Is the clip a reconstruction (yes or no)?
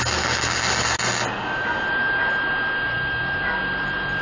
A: no